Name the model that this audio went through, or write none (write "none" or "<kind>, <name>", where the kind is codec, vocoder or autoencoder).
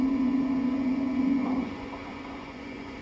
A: vocoder, Vocos